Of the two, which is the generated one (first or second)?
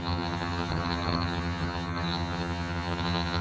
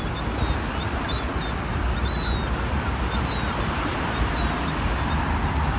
first